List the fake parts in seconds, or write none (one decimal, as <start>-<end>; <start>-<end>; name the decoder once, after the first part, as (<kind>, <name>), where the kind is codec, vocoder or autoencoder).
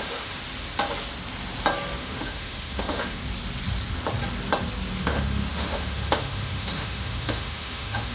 0.0-0.4 (autoencoder, DAC-VAE); 2.0-3.2; 5.0-8.1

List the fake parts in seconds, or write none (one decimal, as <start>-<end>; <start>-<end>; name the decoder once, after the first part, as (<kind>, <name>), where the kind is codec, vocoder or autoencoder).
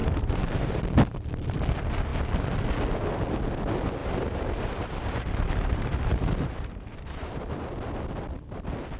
0.0-0.8 (vocoder, BigVGAN v2); 4.0-7.7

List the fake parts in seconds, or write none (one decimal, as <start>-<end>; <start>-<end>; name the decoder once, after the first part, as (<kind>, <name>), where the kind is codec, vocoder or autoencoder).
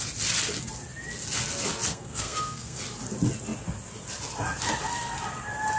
1.9-2.8 (codec, SNAC)